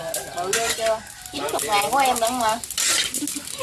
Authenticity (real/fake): real